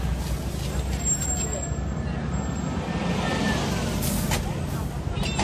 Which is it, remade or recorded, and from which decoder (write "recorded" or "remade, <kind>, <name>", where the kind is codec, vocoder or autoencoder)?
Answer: recorded